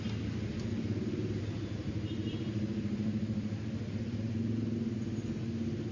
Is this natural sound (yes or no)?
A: yes